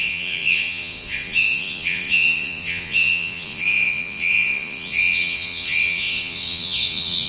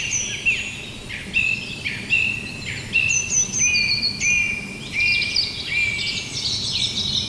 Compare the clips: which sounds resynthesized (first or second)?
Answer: first